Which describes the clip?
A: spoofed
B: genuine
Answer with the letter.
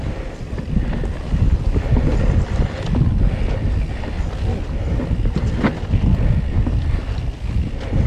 B